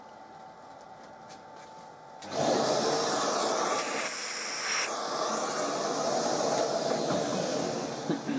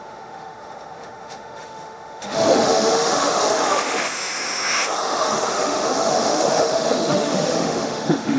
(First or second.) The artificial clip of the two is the second